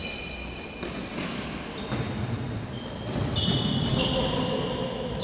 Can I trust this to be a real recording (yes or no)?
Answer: yes